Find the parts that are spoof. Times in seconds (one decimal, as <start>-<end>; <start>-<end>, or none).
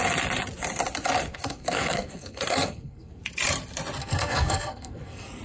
1.3-3.2; 4.0-5.4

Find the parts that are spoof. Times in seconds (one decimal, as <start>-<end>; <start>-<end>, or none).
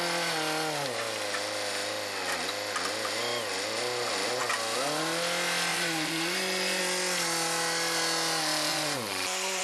5.7-6.8; 8.7-9.6